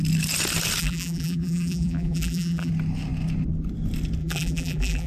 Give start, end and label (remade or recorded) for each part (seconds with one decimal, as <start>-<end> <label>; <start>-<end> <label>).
0.0-0.8 recorded; 0.8-2.7 remade; 2.7-4.2 recorded; 4.2-5.1 remade